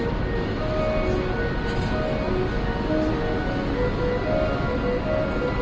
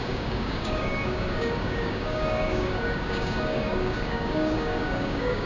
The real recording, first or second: first